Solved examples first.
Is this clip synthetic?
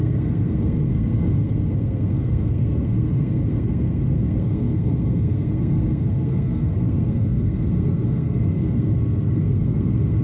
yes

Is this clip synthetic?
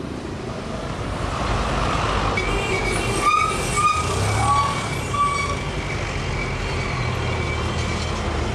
no